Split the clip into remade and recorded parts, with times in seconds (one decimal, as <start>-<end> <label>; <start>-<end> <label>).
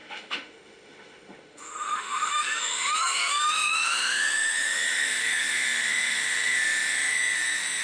0.0-7.8 remade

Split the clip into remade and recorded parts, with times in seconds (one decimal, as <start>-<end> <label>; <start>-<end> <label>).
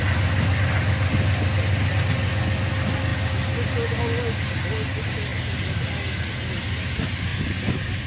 0.0-8.1 recorded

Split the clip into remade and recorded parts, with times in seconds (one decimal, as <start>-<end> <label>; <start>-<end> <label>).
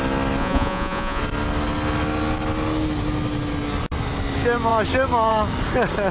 0.0-0.4 recorded; 0.4-1.2 remade; 1.2-6.1 recorded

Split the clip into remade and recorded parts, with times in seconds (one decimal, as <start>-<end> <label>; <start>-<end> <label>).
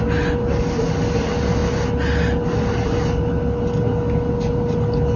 0.0-5.2 recorded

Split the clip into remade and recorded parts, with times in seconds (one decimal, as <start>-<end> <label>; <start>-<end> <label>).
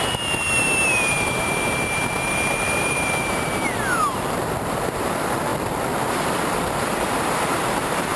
0.0-5.5 remade; 5.5-6.1 recorded; 6.1-8.2 remade